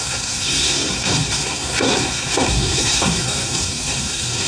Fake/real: fake